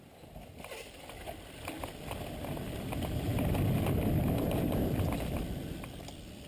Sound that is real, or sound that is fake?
real